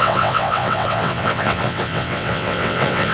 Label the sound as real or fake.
fake